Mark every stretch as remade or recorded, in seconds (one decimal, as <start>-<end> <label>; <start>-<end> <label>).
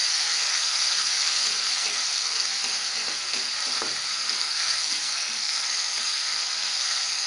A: 0.0-3.5 remade; 3.5-4.1 recorded; 4.1-7.3 remade